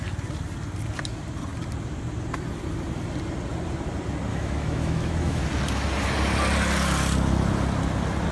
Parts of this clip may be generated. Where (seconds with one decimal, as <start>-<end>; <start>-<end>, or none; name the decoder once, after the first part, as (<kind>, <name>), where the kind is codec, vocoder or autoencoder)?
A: 4.3-5.4 (autoencoder, DAC-VAE)